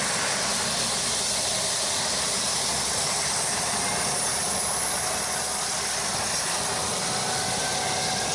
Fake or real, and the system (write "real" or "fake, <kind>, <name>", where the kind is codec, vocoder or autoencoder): real